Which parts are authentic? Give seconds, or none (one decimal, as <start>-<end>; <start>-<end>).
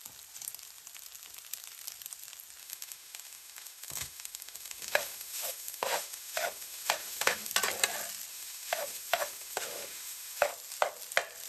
0.0-2.6; 7.5-8.3; 10.5-11.5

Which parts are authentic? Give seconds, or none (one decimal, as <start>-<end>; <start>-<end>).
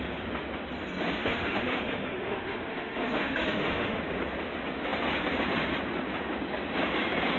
0.0-1.2; 4.0-7.4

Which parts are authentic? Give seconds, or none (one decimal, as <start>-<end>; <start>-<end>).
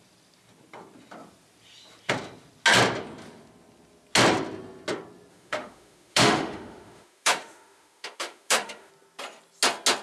0.0-5.3; 8.9-10.0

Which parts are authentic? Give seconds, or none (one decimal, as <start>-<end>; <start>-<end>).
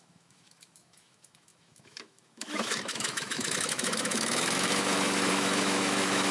none